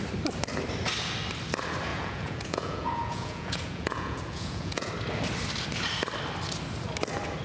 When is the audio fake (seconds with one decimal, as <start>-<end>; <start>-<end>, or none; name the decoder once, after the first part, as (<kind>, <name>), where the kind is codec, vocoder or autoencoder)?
1.9-4.9 (vocoder, Vocos)